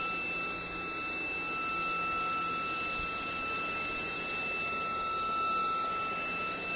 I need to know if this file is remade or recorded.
recorded